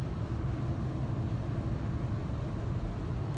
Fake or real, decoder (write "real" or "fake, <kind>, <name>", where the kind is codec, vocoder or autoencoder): real